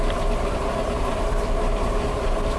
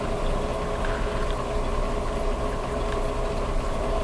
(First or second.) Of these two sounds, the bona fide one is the second